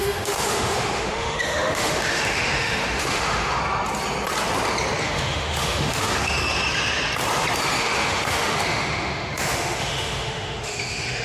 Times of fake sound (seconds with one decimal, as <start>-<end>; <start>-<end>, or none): 0.0-3.6; 5.0-6.4; 7.8-11.2